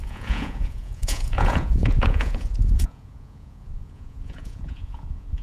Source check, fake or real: fake